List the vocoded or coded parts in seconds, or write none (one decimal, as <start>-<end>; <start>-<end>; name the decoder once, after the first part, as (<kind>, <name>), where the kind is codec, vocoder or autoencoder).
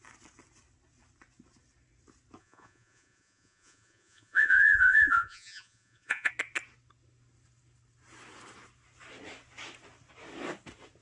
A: 2.4-6.3 (vocoder, Vocos)